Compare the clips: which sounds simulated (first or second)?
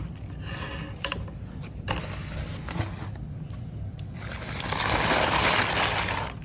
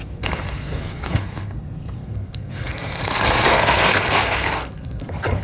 second